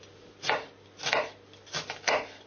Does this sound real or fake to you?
real